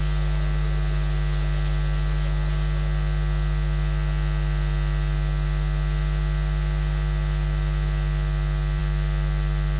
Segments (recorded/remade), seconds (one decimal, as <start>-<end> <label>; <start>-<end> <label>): 0.0-9.8 recorded